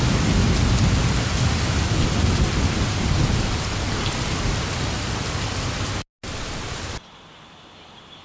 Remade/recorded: recorded